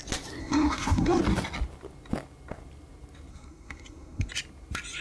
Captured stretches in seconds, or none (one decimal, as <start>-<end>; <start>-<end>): 0.0-0.4; 1.2-3.3; 4.3-5.0